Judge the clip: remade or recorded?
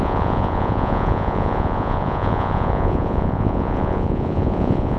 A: remade